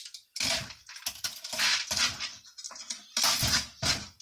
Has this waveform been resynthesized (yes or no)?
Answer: no